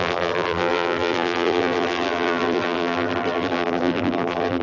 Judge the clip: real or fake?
fake